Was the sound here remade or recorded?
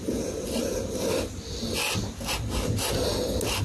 recorded